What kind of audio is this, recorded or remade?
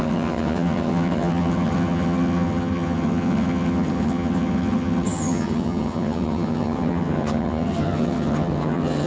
remade